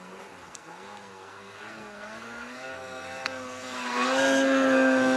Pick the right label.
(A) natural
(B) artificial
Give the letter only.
B